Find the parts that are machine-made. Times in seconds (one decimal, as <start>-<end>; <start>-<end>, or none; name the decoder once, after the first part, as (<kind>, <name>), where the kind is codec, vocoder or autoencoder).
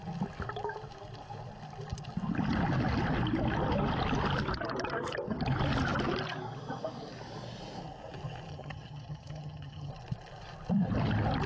8.5-9.9 (vocoder, HiFi-GAN)